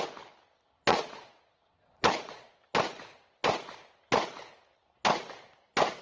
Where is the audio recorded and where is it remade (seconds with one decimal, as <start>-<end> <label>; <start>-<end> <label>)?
0.0-0.9 recorded; 0.9-2.5 remade; 2.5-6.0 recorded